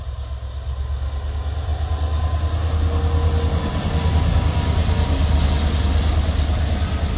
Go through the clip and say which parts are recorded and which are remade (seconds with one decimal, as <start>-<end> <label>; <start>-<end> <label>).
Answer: 0.0-7.2 recorded